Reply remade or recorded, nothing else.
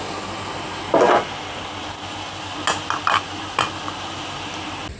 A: recorded